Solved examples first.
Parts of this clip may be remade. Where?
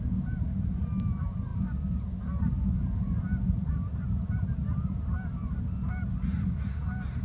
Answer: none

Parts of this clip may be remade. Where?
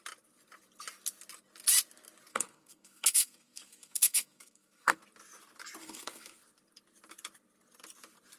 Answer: 2.3-5.0 (codec, SNAC); 5.8-6.4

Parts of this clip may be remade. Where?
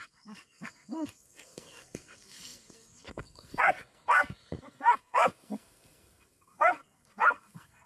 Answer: 0.0-7.9 (codec, SNAC)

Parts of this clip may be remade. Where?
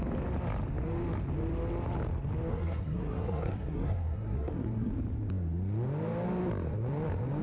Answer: 2.5-4.9 (codec, SNAC)